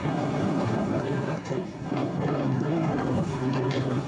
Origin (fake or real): fake